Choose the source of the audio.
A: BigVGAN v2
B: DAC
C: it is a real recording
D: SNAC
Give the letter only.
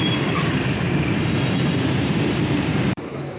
A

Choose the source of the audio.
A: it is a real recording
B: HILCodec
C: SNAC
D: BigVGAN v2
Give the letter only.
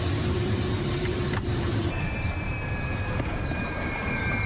D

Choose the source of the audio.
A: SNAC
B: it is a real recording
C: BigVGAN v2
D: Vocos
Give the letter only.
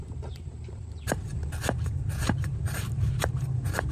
C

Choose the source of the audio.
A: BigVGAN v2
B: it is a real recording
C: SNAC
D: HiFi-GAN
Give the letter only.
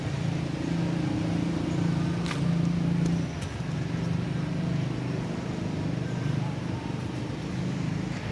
B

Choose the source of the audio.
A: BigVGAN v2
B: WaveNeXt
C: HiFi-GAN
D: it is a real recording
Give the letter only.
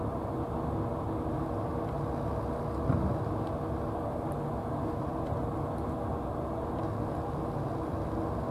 D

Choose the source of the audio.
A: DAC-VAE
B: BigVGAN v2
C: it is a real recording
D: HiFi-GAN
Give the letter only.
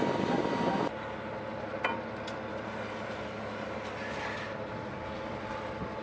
C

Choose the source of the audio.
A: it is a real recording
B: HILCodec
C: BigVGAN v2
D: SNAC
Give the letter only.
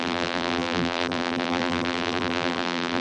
C